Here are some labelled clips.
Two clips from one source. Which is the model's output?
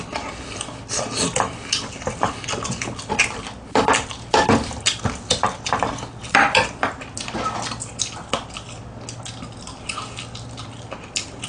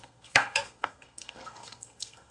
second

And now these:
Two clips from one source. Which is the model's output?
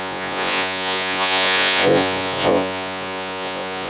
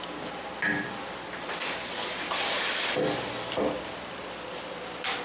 first